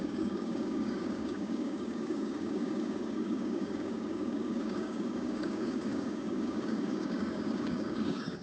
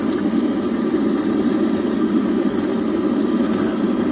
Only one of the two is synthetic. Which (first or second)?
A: first